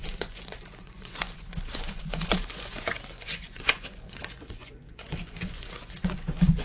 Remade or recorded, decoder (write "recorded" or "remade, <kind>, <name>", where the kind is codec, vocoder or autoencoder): remade, vocoder, Vocos